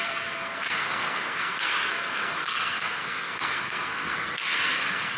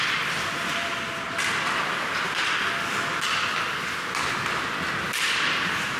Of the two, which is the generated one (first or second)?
first